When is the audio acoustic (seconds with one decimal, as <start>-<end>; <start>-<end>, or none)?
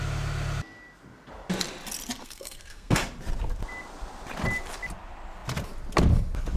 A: 0.0-2.2; 3.0-6.6